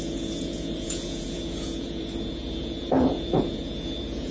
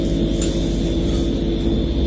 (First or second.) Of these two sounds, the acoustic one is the second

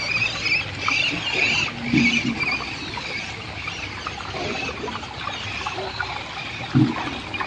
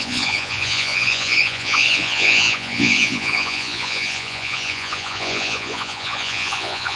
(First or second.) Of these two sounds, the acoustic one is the first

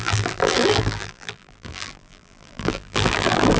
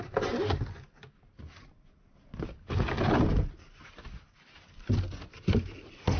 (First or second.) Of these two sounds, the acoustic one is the second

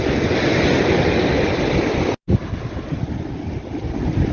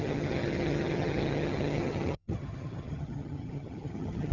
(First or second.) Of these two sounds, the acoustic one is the first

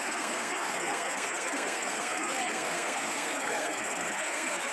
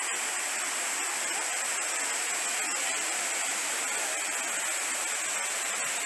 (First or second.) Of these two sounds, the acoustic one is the second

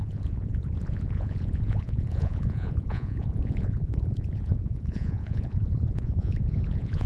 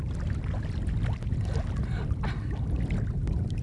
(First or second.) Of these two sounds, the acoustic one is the second